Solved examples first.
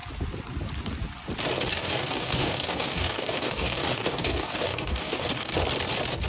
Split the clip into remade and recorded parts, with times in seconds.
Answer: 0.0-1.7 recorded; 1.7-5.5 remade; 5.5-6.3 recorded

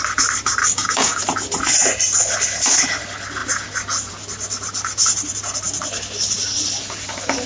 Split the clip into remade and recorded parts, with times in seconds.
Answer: 0.0-0.6 recorded; 0.6-1.2 remade; 1.2-7.5 recorded

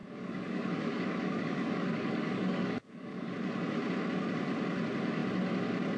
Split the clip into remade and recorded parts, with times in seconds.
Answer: 0.0-3.3 remade; 3.3-6.0 recorded

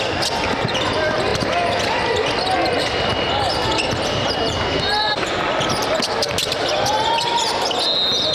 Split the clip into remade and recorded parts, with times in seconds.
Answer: 0.0-8.3 recorded

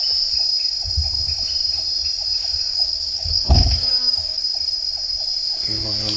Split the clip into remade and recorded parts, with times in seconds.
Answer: 0.0-2.7 recorded; 2.7-4.4 remade; 4.4-6.2 recorded

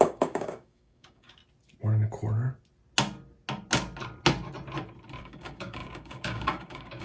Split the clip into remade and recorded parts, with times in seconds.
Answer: 0.0-1.4 remade; 1.4-5.2 recorded; 5.2-7.0 remade

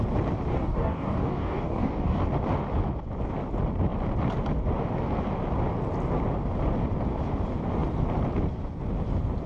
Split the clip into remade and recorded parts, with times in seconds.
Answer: 0.0-0.5 recorded; 0.5-2.2 remade; 2.2-9.5 recorded